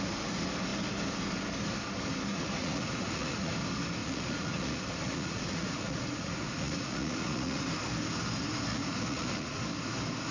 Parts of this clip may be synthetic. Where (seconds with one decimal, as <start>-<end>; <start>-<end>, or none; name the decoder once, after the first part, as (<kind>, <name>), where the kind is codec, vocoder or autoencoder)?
2.3-3.5 (vocoder, Vocos); 4.0-7.6; 8.7-9.6